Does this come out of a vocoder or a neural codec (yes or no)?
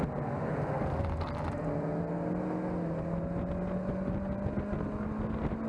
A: no